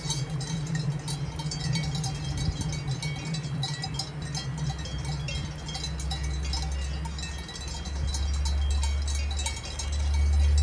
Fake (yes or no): no